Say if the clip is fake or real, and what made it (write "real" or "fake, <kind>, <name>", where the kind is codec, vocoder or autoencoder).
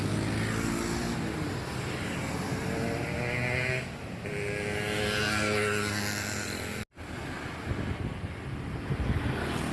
real